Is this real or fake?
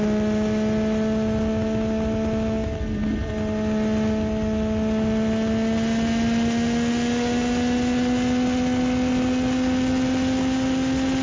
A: real